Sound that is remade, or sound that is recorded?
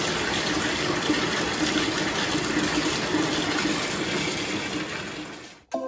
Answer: recorded